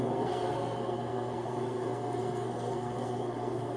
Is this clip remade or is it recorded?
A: remade